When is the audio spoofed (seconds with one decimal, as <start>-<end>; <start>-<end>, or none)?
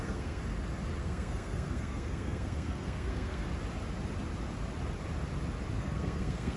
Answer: 0.0-0.4; 1.0-3.5; 5.8-6.6